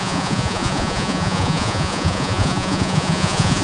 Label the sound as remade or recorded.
remade